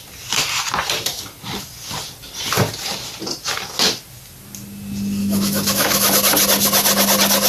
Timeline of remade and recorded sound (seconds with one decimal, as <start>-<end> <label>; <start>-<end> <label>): 0.0-5.2 recorded; 5.2-6.1 remade; 6.1-7.5 recorded